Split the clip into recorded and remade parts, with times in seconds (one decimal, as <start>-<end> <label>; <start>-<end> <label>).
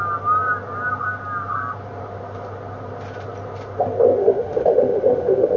0.0-4.2 recorded; 4.2-5.6 remade